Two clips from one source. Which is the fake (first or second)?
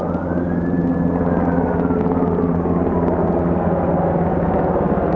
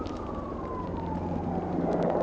second